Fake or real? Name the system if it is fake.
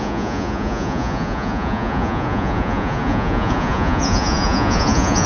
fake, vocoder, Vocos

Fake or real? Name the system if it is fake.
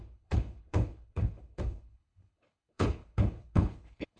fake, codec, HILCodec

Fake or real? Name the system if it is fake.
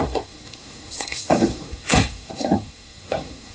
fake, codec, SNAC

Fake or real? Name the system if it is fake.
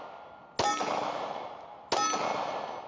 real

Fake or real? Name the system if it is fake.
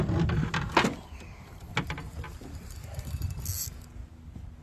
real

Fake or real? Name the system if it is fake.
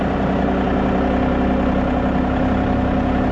real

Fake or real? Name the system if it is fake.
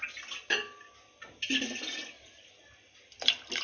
real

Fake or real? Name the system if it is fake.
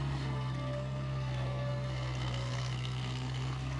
fake, codec, SNAC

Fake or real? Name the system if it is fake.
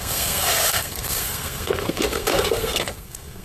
fake, codec, SNAC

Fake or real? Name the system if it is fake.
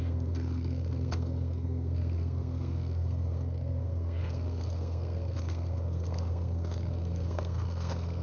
fake, codec, SNAC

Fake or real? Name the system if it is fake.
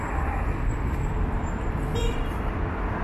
fake, vocoder, BigVGAN v2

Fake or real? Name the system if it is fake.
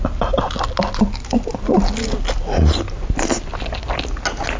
real